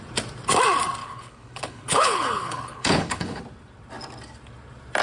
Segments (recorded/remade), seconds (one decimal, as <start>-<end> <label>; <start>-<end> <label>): 0.0-1.0 recorded; 1.0-3.4 remade; 3.4-5.0 recorded